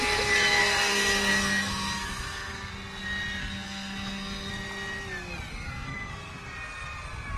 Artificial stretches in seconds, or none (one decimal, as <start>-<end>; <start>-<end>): 0.6-2.7; 3.4-4.5; 5.5-6.1